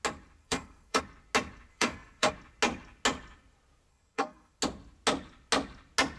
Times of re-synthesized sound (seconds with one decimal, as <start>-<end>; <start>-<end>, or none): 0.4-1.0; 1.7-2.3; 3.9-4.6